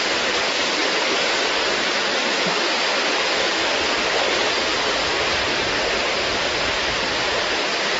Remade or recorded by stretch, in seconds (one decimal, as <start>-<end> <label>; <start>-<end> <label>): 0.0-8.0 recorded